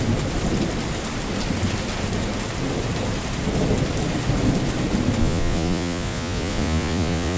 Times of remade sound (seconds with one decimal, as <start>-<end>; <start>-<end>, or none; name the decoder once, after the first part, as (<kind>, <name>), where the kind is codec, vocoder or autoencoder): 5.2-7.4 (vocoder, Vocos)